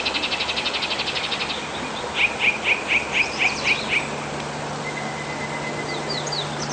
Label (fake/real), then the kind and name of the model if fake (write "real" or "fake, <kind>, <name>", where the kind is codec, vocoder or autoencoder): real